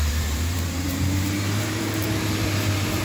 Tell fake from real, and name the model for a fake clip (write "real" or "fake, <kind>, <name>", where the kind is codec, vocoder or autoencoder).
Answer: fake, vocoder, BigVGAN v2